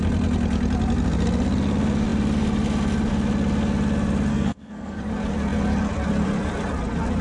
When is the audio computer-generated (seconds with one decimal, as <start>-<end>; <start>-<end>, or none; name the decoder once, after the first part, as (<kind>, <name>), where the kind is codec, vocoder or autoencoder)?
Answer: 4.3-5.1 (codec, SNAC)